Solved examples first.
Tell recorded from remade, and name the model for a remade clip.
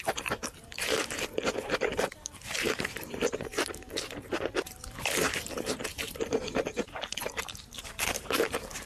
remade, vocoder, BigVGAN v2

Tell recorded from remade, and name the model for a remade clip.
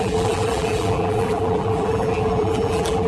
remade, vocoder, BigVGAN v2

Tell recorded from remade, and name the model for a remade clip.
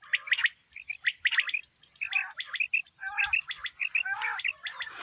recorded